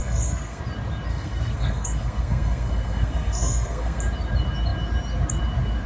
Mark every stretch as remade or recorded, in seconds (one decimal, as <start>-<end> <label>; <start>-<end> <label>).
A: 0.0-0.6 remade; 0.6-1.1 recorded; 1.1-4.0 remade; 4.0-5.9 recorded